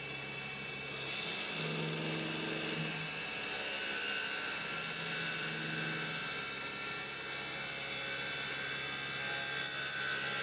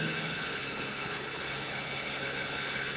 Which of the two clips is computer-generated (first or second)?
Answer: second